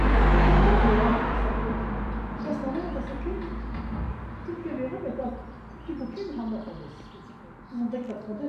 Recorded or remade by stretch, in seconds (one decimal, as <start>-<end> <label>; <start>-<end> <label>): 0.0-1.1 recorded; 1.1-2.5 remade; 2.5-4.9 recorded; 4.9-6.3 remade; 6.3-8.5 recorded